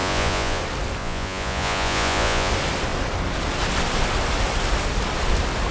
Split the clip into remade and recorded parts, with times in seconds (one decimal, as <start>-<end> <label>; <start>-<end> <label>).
0.0-0.6 remade; 0.6-1.0 recorded; 1.0-2.5 remade; 2.5-5.7 recorded